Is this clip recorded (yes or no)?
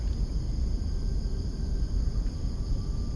yes